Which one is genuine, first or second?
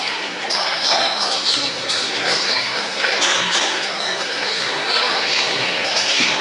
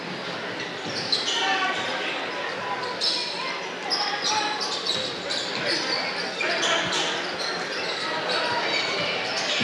second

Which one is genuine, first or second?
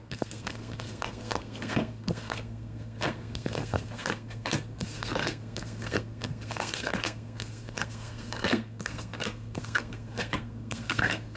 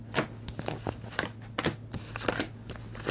second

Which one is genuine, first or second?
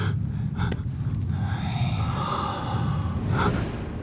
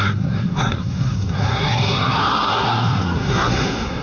first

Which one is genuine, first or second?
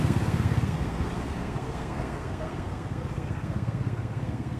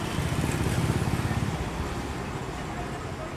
second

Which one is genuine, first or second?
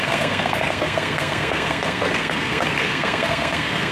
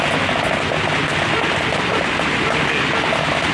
second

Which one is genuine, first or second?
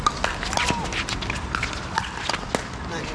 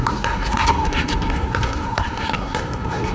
first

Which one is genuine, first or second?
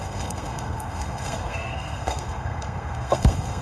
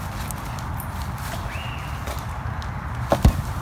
second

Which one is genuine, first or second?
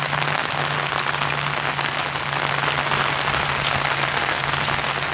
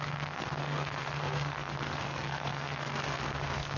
first